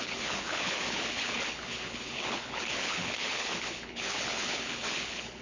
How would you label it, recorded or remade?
remade